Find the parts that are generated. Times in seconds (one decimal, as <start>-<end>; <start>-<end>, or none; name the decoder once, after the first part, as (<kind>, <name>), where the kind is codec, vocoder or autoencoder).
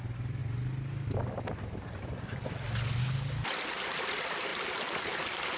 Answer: 0.0-0.4 (vocoder, BigVGAN v2); 3.8-4.5